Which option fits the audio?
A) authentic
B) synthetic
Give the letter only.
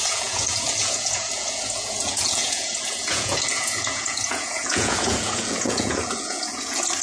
B